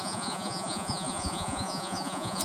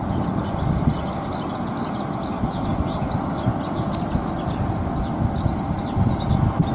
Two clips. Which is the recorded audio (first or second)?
second